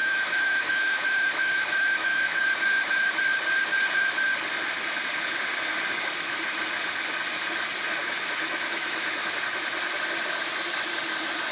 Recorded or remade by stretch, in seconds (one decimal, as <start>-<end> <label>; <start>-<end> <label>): 0.0-2.4 remade; 2.4-8.0 recorded; 8.0-9.3 remade; 9.3-11.5 recorded